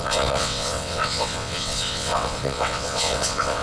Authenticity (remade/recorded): remade